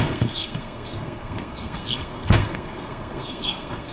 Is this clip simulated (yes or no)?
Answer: yes